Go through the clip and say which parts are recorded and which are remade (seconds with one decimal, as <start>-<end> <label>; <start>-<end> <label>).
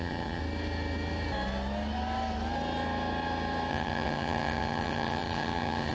0.0-0.4 remade; 0.4-3.7 recorded; 3.7-5.9 remade